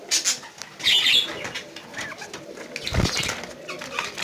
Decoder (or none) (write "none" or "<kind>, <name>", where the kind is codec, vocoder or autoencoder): none